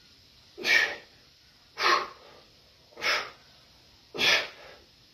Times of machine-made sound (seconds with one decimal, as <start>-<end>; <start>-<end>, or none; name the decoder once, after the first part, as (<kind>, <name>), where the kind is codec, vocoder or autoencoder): 0.0-1.5 (vocoder, BigVGAN v2)